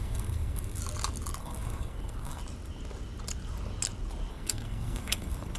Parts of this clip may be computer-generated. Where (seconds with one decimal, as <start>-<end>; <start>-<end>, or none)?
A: 0.0-0.8; 1.4-2.4; 4.3-5.6